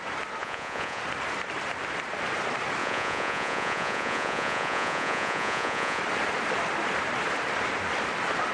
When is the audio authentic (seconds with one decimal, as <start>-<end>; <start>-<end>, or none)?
0.0-0.4; 1.0-2.8; 6.0-8.5